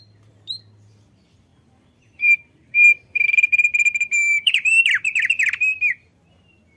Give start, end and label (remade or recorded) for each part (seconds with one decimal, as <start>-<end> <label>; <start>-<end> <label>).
0.0-1.5 recorded; 1.5-4.9 remade; 4.9-6.8 recorded